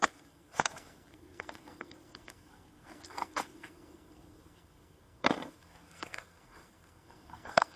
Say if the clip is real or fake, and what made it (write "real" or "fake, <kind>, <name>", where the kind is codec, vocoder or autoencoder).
fake, codec, SNAC